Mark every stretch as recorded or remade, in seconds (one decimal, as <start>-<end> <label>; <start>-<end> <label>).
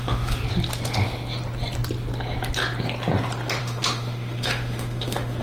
0.0-0.4 remade; 0.4-3.6 recorded; 3.6-5.4 remade